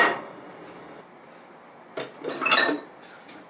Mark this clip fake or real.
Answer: real